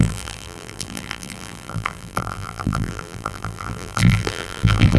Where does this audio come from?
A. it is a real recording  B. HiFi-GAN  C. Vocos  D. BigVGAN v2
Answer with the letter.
D